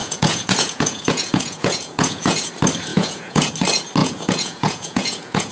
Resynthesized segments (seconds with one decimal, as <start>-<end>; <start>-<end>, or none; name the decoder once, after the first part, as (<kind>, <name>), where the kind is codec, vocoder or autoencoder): 0.0-2.5 (vocoder, Vocos); 2.9-3.5; 4.0-5.5